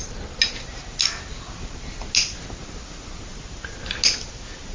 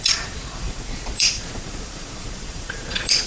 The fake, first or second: second